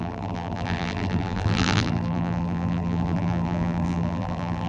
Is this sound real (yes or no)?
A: no